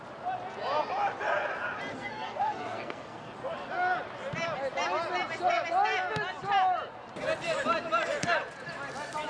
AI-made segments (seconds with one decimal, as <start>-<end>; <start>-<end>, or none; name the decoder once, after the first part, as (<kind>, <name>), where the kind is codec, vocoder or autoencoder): 1.9-3.3 (codec, SNAC)